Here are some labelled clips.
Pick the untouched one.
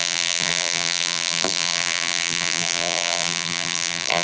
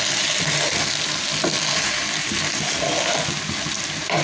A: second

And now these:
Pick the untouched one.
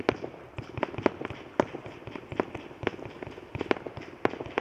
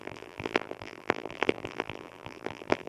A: first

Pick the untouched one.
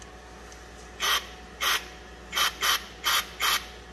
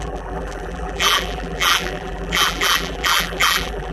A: first